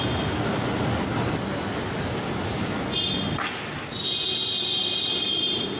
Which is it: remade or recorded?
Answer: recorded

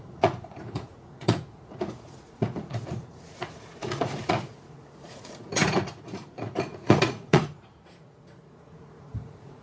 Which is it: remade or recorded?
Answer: remade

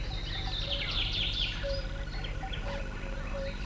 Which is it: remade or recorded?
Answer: recorded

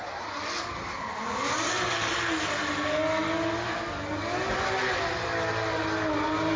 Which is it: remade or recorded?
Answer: recorded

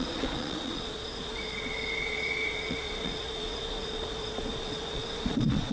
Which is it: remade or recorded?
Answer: remade